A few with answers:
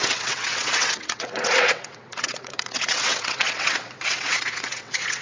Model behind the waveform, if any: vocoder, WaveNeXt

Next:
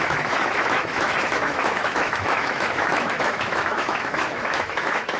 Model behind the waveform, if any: autoencoder, DAC-VAE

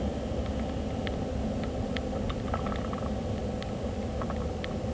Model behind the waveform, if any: none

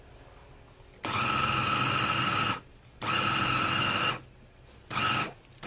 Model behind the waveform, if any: none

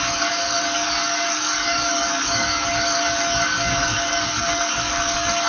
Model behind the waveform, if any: codec, DAC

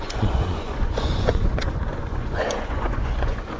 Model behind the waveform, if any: vocoder, Vocos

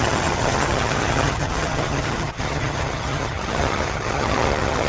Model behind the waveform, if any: vocoder, HiFi-GAN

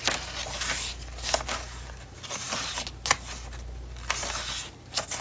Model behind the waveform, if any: none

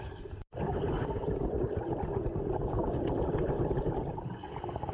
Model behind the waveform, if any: none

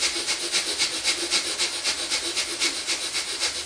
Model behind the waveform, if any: none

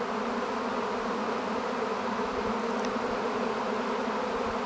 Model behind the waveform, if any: none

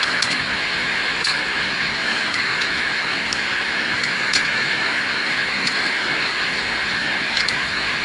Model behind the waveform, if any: codec, SNAC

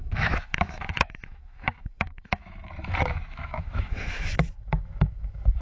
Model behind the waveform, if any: autoencoder, DAC-VAE